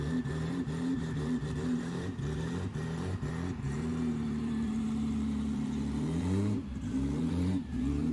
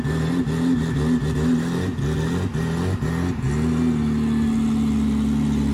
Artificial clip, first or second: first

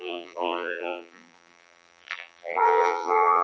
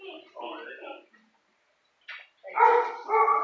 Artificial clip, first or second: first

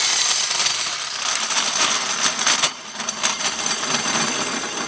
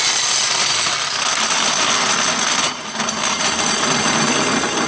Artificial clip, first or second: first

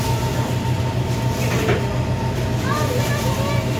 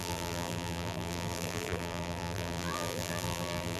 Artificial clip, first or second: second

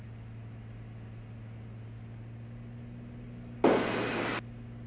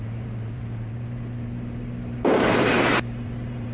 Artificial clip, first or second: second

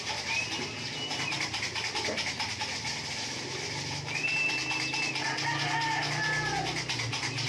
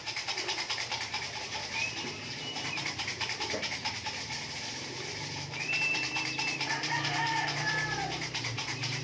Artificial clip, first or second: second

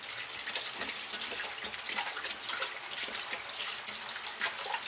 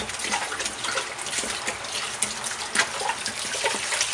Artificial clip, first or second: first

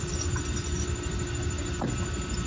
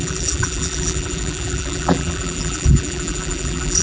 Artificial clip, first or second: second